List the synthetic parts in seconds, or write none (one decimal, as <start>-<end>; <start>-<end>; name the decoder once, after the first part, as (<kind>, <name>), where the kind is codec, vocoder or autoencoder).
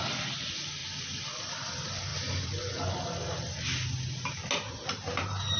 none